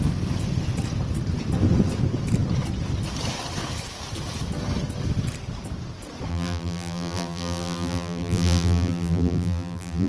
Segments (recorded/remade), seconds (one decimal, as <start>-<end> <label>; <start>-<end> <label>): 0.0-6.3 recorded; 6.3-10.1 remade